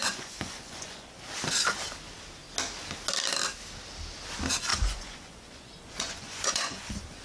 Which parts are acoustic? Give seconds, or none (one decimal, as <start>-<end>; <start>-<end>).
1.2-4.7